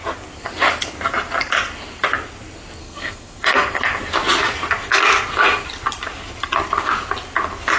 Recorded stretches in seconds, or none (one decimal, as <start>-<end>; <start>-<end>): 0.0-2.8; 3.8-7.8